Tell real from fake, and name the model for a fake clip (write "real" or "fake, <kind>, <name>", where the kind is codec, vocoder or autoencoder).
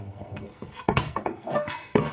fake, codec, SNAC